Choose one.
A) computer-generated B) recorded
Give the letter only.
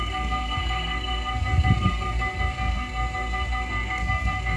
A